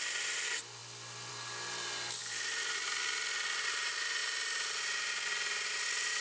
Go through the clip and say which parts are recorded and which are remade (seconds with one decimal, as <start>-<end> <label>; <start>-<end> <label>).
0.0-6.2 recorded